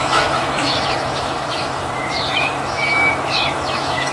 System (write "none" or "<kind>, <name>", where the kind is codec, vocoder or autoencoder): autoencoder, DAC-VAE